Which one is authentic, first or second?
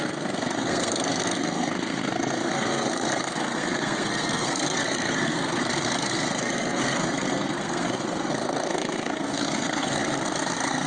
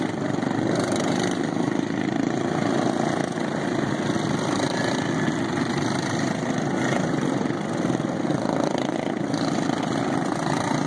second